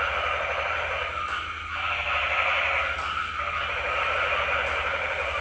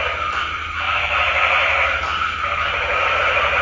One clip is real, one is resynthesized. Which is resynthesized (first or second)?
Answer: second